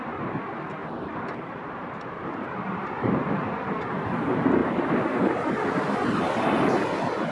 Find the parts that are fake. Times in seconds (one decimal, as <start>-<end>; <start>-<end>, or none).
0.8-3.7; 4.6-5.5